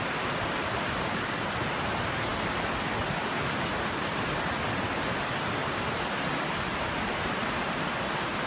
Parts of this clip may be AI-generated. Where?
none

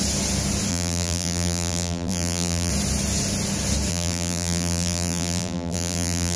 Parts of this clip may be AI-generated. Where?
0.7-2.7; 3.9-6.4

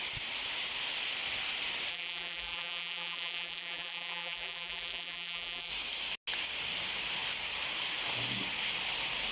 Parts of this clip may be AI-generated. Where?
1.9-5.7

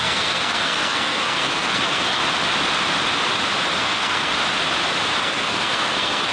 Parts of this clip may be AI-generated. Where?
0.0-2.2; 3.8-4.3; 5.2-6.3

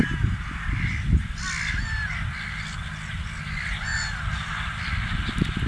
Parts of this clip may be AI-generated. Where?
none